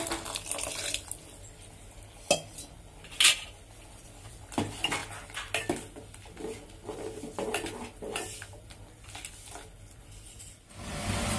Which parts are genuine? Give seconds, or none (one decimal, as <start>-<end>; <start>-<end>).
0.0-11.4